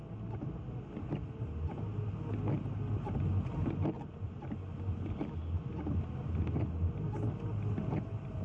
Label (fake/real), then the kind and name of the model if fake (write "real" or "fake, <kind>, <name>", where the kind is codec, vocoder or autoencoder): real